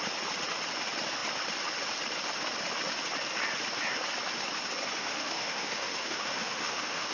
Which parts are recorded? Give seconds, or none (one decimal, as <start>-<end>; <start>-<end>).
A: 0.0-5.0